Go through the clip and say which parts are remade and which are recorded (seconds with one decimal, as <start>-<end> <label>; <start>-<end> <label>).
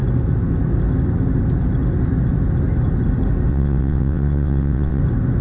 0.0-3.5 recorded; 3.5-5.0 remade; 5.0-5.4 recorded